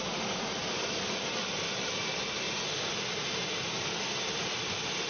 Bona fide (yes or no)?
yes